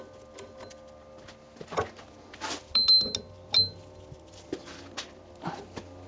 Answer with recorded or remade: recorded